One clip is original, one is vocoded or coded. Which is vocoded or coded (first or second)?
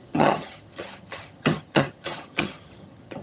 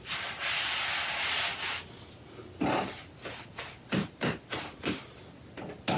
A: first